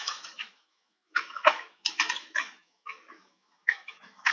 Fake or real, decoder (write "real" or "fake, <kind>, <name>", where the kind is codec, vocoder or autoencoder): fake, autoencoder, DAC-VAE